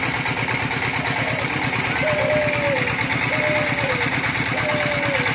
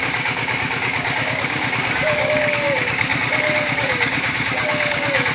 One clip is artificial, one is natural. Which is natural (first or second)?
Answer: first